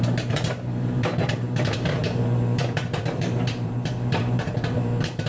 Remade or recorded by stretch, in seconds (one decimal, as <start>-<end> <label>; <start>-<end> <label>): 0.0-5.3 remade